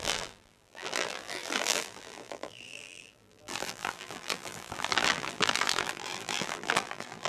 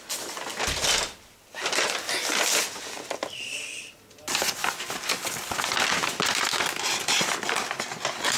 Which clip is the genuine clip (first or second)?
second